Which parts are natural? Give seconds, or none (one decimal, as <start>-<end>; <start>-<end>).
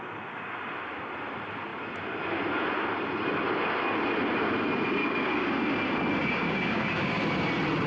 0.0-5.0; 5.5-6.2; 7.2-7.9